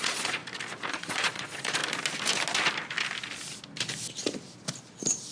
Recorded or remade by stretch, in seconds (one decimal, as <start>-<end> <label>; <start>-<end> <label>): 0.0-0.4 remade; 0.4-0.9 recorded; 0.9-1.8 remade; 1.8-5.3 recorded